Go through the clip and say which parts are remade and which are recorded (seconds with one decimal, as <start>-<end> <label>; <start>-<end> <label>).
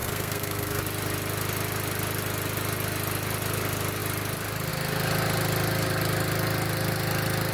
0.0-0.8 remade; 0.8-7.5 recorded